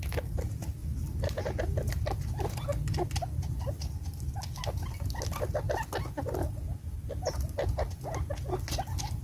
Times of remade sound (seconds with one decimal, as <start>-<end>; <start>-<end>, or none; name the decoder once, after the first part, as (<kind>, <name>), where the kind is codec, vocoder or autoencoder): none